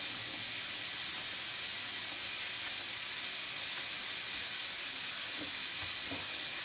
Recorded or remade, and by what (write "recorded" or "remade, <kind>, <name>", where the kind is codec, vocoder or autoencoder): recorded